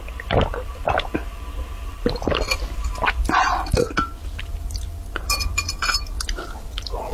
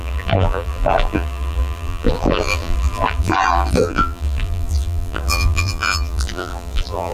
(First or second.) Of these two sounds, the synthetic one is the second